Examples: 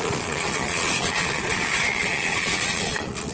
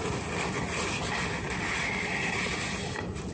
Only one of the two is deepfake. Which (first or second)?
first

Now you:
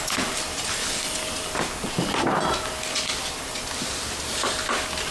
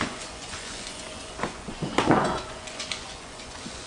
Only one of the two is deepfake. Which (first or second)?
second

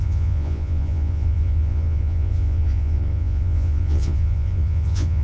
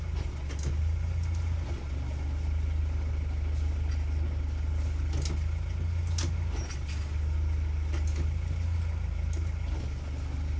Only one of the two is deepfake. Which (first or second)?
first